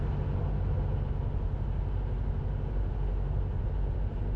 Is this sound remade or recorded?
recorded